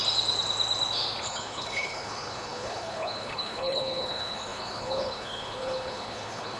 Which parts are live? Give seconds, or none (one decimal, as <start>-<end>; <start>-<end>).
0.0-1.2

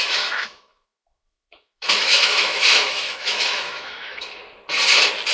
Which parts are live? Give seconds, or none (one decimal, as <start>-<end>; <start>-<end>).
4.4-5.3

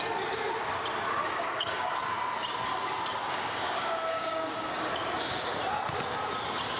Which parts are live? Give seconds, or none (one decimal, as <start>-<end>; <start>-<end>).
0.0-1.2; 1.9-3.2; 4.9-6.8